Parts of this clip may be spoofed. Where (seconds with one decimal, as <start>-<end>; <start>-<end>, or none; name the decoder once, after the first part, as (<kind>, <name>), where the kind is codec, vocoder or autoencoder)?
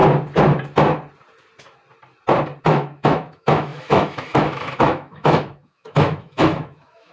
2.6-7.1 (autoencoder, DAC-VAE)